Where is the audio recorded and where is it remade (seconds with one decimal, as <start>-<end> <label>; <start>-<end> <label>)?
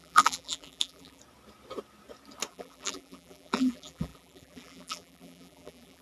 0.0-1.2 remade; 1.2-2.5 recorded; 2.5-6.0 remade